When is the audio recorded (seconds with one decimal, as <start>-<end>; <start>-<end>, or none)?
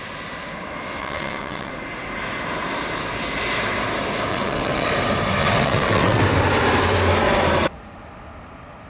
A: 0.0-1.0; 1.7-4.3; 4.9-5.4; 6.2-8.9